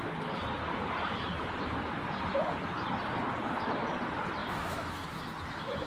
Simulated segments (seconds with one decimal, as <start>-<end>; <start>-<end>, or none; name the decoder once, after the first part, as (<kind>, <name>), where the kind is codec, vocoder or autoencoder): 4.4-5.9 (autoencoder, DAC-VAE)